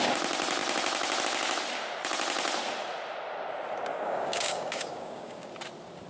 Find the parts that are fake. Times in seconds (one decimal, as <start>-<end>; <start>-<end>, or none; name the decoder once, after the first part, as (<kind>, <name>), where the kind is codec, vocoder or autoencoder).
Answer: 3.9-5.5 (codec, DAC)